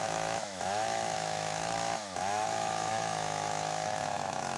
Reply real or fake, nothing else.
fake